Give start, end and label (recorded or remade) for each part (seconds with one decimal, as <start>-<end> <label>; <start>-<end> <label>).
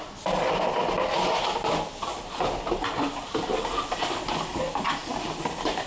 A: 0.0-2.9 recorded; 2.9-4.1 remade; 4.1-5.9 recorded